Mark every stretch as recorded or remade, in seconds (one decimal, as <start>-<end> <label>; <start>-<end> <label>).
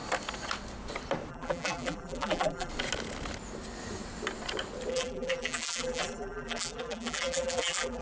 0.0-1.3 recorded; 1.3-2.7 remade; 2.7-4.9 recorded; 4.9-8.0 remade